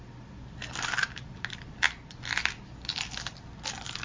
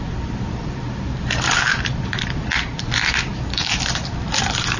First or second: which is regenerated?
second